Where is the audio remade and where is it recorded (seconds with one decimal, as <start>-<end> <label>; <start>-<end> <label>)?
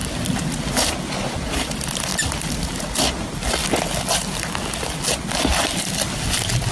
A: 0.0-6.7 recorded